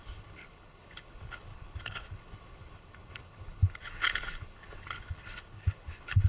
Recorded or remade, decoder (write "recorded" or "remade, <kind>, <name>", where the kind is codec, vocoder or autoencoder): remade, codec, HILCodec